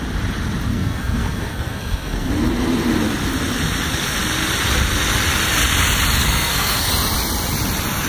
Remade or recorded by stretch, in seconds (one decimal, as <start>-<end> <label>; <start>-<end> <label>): 0.0-0.7 recorded; 0.7-2.3 remade; 2.3-6.2 recorded; 6.2-6.9 remade; 6.9-8.1 recorded

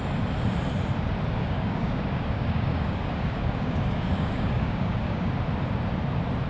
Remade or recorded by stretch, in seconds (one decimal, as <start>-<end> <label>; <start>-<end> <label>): 0.0-1.4 recorded; 1.4-5.3 remade; 5.3-6.5 recorded

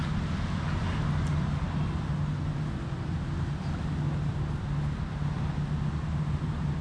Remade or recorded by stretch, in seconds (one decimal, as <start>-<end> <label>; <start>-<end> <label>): 0.0-1.3 recorded; 1.3-1.9 remade; 1.9-6.8 recorded

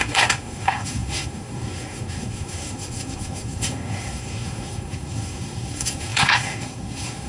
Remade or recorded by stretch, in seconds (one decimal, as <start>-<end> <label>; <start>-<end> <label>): 0.0-7.3 remade

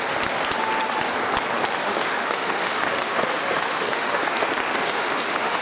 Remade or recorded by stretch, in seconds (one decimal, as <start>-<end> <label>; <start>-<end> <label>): 0.0-1.8 recorded; 1.8-4.3 remade; 4.3-4.8 recorded; 4.8-5.6 remade

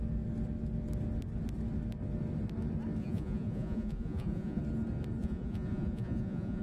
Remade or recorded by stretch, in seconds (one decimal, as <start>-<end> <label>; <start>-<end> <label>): 0.0-3.0 recorded; 3.0-4.6 remade; 4.6-5.2 recorded; 5.2-6.6 remade

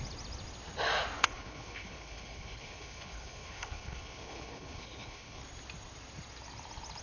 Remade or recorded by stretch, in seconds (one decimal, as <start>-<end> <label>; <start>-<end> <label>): 0.0-1.2 recorded; 1.2-5.4 remade; 5.4-7.0 recorded